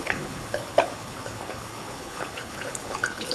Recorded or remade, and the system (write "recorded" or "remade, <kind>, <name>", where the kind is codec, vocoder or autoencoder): remade, codec, HILCodec